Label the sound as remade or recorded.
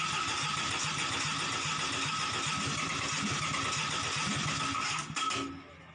recorded